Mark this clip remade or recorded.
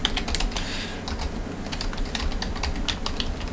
recorded